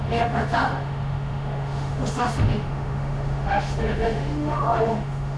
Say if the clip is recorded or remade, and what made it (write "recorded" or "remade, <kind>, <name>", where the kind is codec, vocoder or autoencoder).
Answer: remade, autoencoder, DAC-VAE